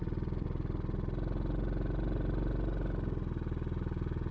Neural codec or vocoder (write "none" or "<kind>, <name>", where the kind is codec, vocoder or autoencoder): none